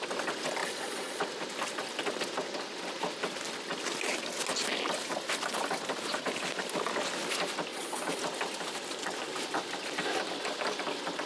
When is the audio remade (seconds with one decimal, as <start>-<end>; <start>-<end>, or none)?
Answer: 0.6-1.2; 7.7-8.2